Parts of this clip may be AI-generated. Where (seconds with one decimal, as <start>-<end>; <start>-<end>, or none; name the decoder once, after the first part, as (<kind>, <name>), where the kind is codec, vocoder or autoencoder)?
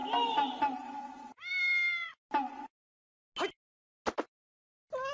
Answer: 0.6-1.7 (vocoder, BigVGAN v2)